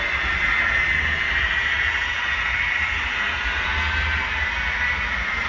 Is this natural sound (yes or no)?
yes